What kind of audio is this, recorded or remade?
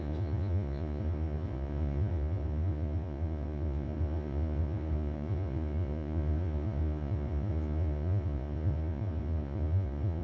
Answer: remade